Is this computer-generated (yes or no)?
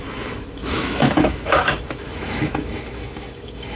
yes